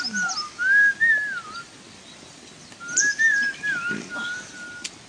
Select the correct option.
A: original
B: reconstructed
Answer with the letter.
A